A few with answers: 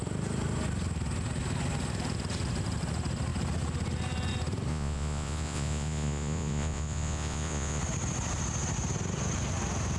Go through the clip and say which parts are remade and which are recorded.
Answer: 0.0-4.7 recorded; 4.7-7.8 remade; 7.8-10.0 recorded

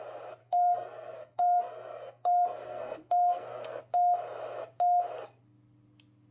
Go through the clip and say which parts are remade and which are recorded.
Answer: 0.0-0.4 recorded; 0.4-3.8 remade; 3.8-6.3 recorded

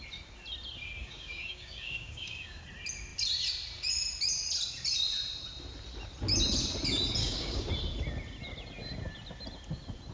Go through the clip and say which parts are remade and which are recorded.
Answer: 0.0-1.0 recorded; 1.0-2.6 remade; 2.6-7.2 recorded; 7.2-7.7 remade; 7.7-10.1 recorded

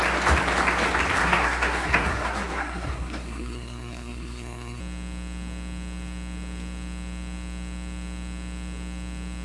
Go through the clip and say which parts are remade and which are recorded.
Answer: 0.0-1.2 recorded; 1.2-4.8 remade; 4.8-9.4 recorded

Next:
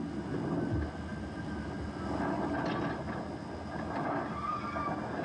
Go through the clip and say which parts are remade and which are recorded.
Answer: 0.0-5.2 recorded

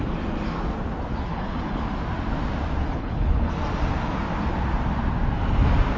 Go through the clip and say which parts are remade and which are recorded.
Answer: 0.0-1.3 recorded; 1.3-1.8 remade; 1.8-2.8 recorded; 2.8-3.5 remade; 3.5-6.0 recorded

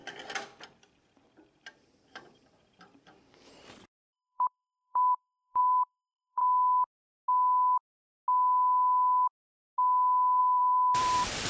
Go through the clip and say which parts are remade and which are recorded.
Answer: 0.0-1.6 recorded; 1.6-6.4 remade; 6.4-10.4 recorded; 10.4-11.5 remade

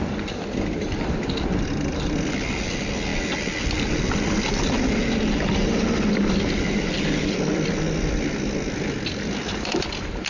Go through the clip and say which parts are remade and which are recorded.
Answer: 0.0-10.3 recorded